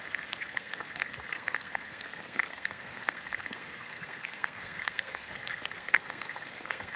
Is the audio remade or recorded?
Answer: remade